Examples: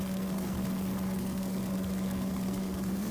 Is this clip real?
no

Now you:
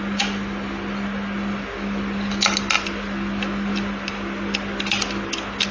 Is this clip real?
yes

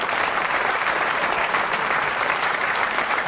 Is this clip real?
no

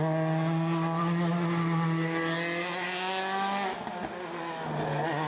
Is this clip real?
yes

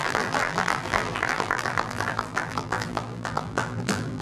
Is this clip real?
no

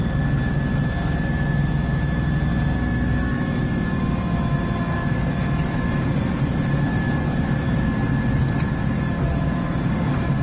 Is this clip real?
yes